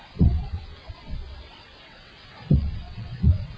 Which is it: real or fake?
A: fake